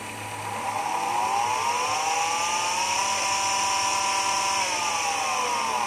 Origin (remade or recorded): recorded